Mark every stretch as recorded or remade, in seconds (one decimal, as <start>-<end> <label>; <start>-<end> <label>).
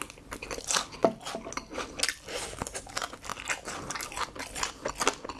0.0-5.4 recorded